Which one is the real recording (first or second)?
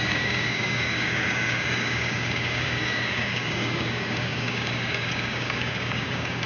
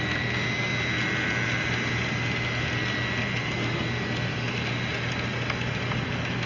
second